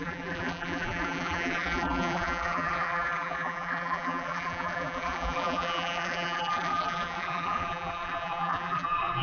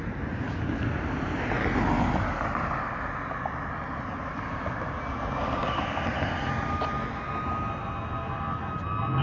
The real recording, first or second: second